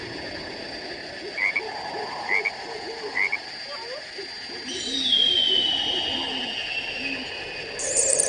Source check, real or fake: real